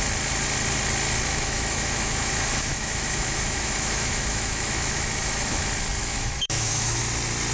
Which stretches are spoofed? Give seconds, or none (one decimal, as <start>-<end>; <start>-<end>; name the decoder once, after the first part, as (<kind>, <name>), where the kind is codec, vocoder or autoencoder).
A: 1.3-5.6 (autoencoder, DAC-VAE); 6.0-7.0